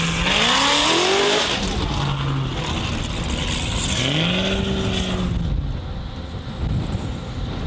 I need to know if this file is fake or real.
real